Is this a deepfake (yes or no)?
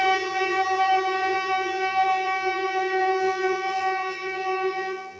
yes